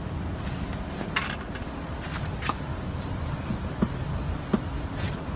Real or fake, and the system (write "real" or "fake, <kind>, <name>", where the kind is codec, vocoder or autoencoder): real